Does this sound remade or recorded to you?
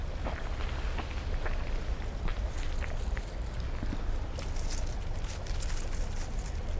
recorded